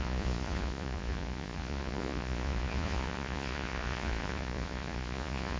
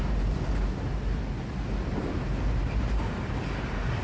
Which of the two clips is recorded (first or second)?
second